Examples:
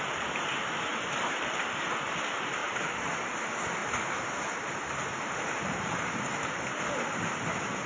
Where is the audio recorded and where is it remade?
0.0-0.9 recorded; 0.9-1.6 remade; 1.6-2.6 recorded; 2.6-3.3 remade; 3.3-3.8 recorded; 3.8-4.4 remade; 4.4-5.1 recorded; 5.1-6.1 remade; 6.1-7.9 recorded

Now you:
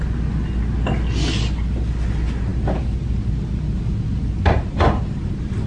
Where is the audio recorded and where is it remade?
0.0-5.7 recorded

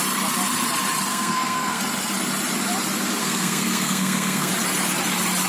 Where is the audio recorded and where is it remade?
0.0-1.1 recorded; 1.1-1.8 remade; 1.8-3.2 recorded; 3.2-4.5 remade; 4.5-5.5 recorded

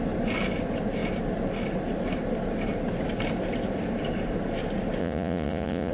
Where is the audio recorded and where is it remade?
0.0-5.0 recorded; 5.0-5.9 remade